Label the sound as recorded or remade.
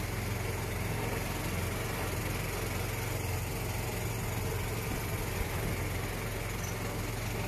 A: recorded